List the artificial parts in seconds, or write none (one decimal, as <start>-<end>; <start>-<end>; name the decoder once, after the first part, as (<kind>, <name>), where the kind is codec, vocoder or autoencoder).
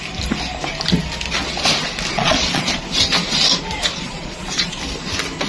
2.1-2.8 (vocoder, Vocos); 3.9-4.8